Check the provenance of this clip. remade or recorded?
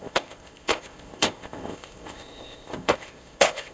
remade